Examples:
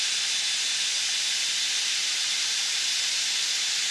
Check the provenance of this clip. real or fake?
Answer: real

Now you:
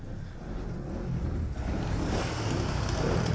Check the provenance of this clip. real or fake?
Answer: real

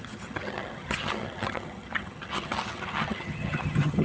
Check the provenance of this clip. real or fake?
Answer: fake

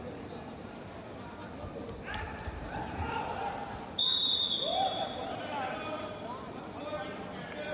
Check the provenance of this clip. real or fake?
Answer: fake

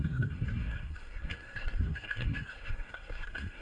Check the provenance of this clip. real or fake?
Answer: fake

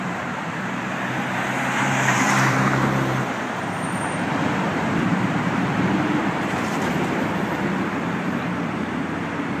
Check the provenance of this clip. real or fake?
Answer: fake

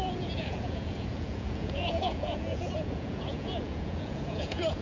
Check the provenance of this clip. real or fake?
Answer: fake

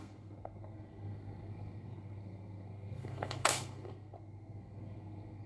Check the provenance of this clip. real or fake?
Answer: fake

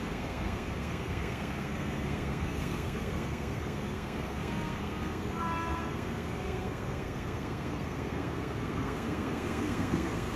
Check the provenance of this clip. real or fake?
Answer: fake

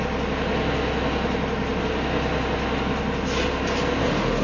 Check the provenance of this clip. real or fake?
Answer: real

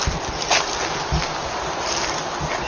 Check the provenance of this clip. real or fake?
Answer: real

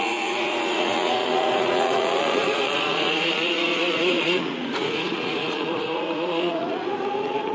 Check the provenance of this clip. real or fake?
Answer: fake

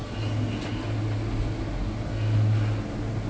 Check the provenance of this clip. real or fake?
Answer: real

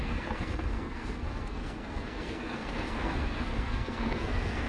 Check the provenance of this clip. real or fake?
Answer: fake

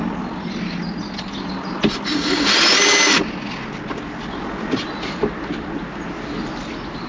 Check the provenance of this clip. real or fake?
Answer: real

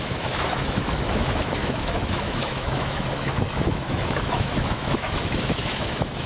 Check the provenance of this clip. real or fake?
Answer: fake